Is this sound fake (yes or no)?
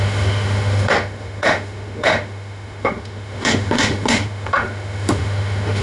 yes